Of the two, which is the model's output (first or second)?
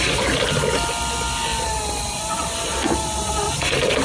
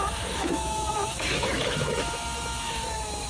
second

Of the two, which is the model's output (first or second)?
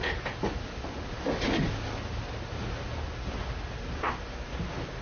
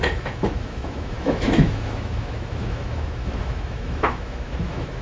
second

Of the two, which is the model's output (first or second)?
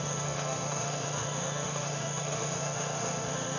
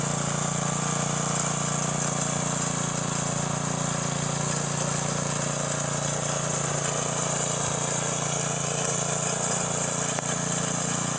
first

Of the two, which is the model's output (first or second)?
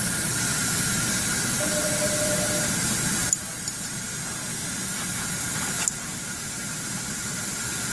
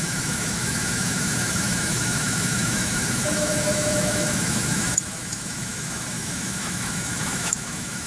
second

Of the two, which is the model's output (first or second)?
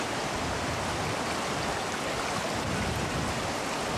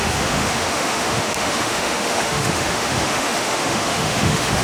second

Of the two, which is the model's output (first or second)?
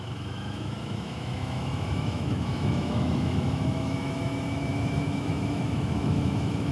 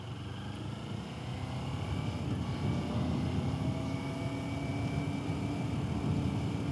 first